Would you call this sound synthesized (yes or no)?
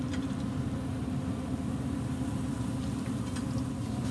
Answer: no